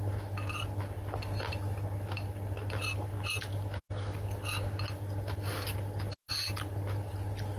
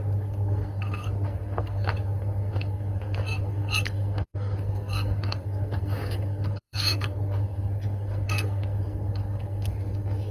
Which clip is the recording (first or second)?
first